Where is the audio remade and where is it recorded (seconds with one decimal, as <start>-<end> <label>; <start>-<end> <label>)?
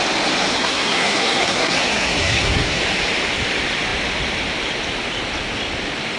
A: 0.0-0.5 recorded; 0.5-2.8 remade; 2.8-6.2 recorded